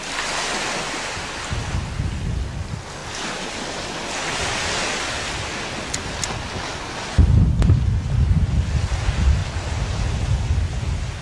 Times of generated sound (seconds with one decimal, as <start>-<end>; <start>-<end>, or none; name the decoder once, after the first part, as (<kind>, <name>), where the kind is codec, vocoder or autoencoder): none